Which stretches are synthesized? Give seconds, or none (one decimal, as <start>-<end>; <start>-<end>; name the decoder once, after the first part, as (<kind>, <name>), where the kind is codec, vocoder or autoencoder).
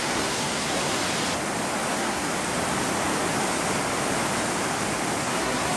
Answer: 0.0-1.0 (codec, SNAC); 1.9-2.3; 5.2-5.8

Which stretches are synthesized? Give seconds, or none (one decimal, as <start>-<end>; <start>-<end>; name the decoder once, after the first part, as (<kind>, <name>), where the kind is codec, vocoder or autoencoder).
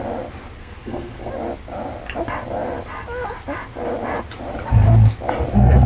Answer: 0.6-1.3 (codec, SNAC)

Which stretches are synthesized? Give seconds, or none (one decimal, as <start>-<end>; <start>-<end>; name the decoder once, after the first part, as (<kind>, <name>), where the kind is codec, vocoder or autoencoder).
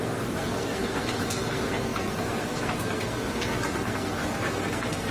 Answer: 0.0-5.1 (codec, SNAC)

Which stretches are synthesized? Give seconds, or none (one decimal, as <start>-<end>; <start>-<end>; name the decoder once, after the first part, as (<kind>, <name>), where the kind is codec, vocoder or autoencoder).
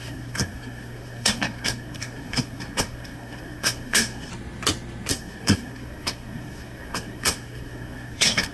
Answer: 0.0-4.3 (codec, SNAC); 5.1-8.5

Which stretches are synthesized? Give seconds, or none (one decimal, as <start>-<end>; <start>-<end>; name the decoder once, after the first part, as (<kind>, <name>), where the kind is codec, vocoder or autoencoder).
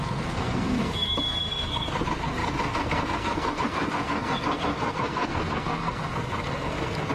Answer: 0.0-7.1 (codec, SNAC)